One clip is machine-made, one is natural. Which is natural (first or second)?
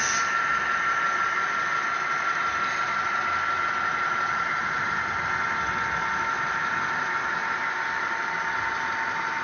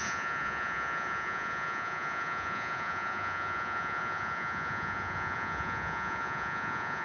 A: first